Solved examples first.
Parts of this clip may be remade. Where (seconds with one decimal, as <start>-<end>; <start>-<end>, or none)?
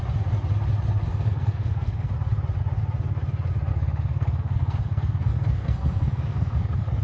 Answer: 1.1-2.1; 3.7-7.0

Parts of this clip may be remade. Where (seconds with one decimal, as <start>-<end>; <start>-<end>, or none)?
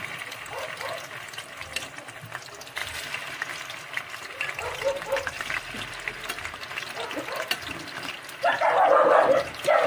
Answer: none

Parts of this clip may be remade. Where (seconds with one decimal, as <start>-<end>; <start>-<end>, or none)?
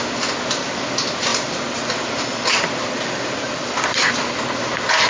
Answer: 1.3-4.4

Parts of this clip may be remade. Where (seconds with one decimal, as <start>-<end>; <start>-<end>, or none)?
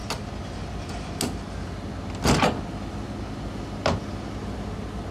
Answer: none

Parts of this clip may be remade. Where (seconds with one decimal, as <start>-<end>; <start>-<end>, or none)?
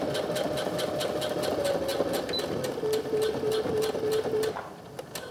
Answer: none